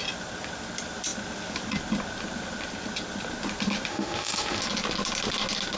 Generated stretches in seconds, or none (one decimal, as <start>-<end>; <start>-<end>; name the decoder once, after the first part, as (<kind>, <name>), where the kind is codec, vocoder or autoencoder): 3.9-4.6 (autoencoder, DAC-VAE)